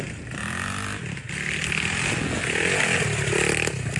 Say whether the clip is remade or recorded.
recorded